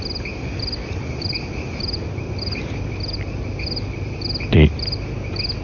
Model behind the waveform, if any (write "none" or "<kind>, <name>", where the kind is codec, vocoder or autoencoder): none